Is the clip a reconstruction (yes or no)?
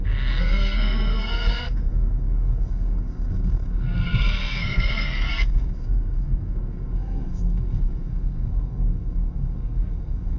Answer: yes